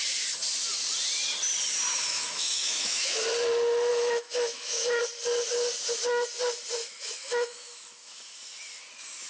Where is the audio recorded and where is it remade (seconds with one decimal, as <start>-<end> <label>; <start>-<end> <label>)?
0.0-1.9 recorded; 1.9-3.2 remade; 3.2-3.9 recorded; 3.9-5.0 remade; 5.0-6.8 recorded; 6.8-8.3 remade; 8.3-9.3 recorded

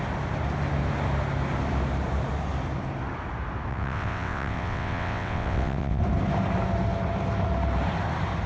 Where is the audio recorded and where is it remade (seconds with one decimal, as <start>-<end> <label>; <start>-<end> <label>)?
0.0-3.7 recorded; 3.7-6.0 remade; 6.0-8.5 recorded

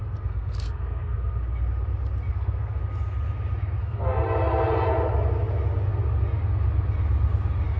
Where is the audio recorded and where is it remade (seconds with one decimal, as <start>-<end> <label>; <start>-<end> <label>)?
0.0-1.4 remade; 1.4-2.3 recorded; 2.3-2.8 remade; 2.8-3.8 recorded; 3.8-4.2 remade; 4.2-7.8 recorded

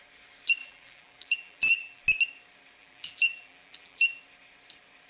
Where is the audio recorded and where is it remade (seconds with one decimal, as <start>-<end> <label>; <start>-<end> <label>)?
0.0-0.6 recorded; 0.6-2.0 remade; 2.0-2.8 recorded; 2.8-4.2 remade; 4.2-5.1 recorded

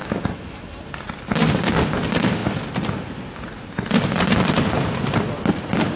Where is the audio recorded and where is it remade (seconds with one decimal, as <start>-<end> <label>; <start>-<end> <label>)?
0.0-0.7 remade; 0.7-6.0 recorded

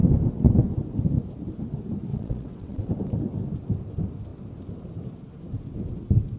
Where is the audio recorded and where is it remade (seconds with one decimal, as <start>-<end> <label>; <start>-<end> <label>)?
0.0-2.1 recorded; 2.1-2.9 remade; 2.9-6.4 recorded

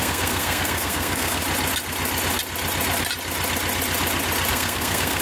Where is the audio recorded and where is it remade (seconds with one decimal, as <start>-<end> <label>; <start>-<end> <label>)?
0.0-1.4 remade; 1.4-4.5 recorded; 4.5-5.2 remade

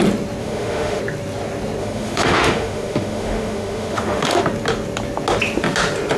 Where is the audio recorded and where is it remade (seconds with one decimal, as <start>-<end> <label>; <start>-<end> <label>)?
0.0-0.4 recorded; 0.4-1.0 remade; 1.0-1.8 recorded; 1.8-4.4 remade; 4.4-6.2 recorded